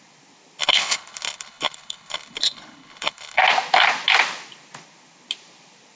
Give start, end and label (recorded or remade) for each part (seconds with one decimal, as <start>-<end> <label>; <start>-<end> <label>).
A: 0.0-0.6 recorded; 0.6-3.4 remade; 3.4-6.0 recorded